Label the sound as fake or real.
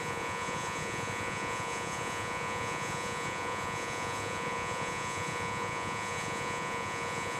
fake